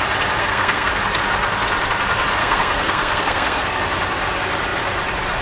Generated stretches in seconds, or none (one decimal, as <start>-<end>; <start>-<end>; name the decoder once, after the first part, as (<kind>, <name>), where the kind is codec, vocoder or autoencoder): 0.4-0.9 (codec, SNAC); 2.4-3.8